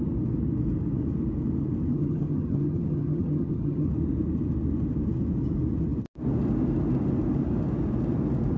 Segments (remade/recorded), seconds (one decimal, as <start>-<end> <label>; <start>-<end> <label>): 0.0-1.9 recorded; 1.9-3.9 remade; 3.9-8.6 recorded